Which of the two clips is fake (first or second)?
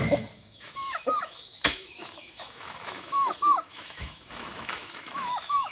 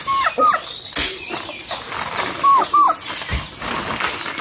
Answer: first